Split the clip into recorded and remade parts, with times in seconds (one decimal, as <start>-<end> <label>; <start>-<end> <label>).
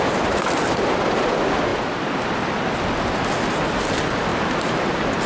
0.0-4.3 recorded; 4.3-5.3 remade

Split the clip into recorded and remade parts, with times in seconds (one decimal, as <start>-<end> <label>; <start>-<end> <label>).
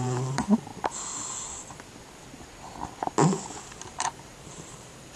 0.0-0.7 remade; 0.7-3.6 recorded; 3.6-5.2 remade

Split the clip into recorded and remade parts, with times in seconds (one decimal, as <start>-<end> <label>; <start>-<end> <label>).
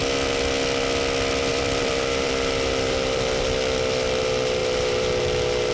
0.0-1.5 recorded; 1.5-5.7 remade